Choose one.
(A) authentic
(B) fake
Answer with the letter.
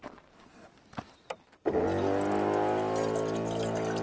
A